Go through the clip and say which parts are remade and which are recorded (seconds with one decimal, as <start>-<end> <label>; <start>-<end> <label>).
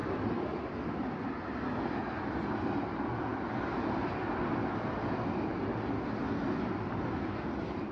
0.0-7.9 recorded